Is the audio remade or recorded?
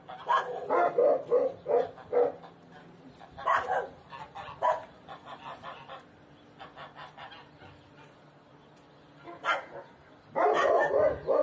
recorded